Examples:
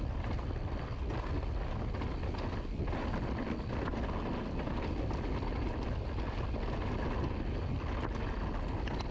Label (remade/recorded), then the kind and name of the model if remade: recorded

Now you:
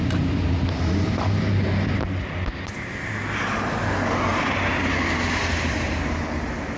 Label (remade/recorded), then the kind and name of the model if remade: recorded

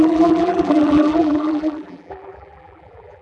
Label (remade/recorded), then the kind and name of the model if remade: remade, vocoder, BigVGAN v2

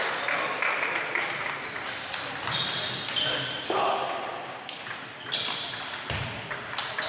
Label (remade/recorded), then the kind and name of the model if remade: recorded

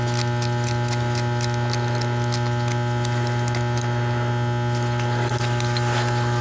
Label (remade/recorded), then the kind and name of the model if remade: recorded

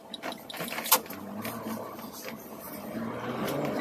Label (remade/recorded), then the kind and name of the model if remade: remade, vocoder, BigVGAN v2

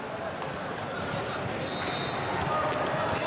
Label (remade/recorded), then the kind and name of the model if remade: recorded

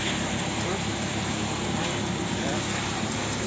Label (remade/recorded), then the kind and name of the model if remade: remade, vocoder, BigVGAN v2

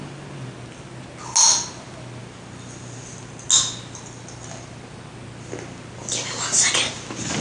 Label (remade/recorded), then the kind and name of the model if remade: recorded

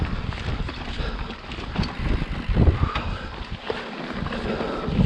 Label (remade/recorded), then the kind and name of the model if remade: recorded